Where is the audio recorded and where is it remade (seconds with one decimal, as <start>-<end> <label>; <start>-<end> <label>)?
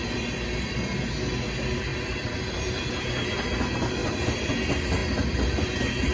0.0-1.9 recorded; 1.9-2.9 remade; 2.9-4.0 recorded; 4.0-4.5 remade; 4.5-6.1 recorded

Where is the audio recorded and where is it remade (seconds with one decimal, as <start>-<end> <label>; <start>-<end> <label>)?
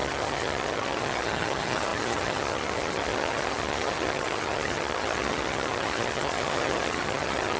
0.0-7.6 remade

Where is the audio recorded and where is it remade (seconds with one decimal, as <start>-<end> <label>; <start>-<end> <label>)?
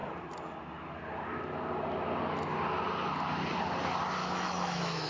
0.0-4.2 recorded; 4.2-5.1 remade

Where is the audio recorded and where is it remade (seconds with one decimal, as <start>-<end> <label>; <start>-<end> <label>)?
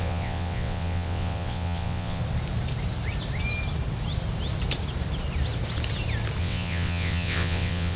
0.0-2.2 remade; 2.2-6.4 recorded; 6.4-8.0 remade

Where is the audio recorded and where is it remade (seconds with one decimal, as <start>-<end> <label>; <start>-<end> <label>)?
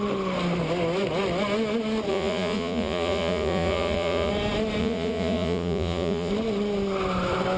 0.0-2.1 recorded; 2.1-4.3 remade; 4.3-4.8 recorded; 4.8-6.3 remade; 6.3-7.6 recorded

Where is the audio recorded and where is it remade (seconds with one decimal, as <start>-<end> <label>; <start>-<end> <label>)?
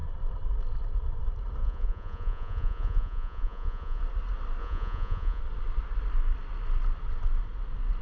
0.0-1.6 recorded; 1.6-4.0 remade; 4.0-4.6 recorded; 4.6-5.4 remade; 5.4-8.0 recorded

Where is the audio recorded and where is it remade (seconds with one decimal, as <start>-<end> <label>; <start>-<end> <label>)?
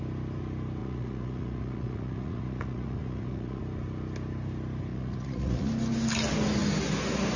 0.0-0.8 recorded; 0.8-3.6 remade; 3.6-4.9 recorded; 4.9-5.7 remade; 5.7-7.4 recorded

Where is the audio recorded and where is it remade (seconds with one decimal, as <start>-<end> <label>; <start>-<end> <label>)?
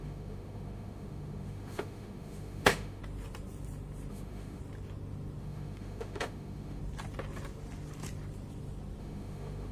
0.0-3.0 remade; 3.0-4.1 recorded; 4.1-4.6 remade; 4.6-5.4 recorded; 5.4-6.8 remade; 6.8-9.0 recorded; 9.0-9.7 remade